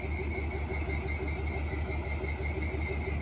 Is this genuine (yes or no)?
yes